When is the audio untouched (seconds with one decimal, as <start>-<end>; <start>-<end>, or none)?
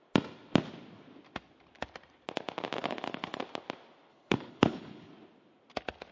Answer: 0.0-2.8; 3.4-4.1; 5.1-6.1